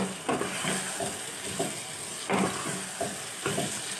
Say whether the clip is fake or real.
real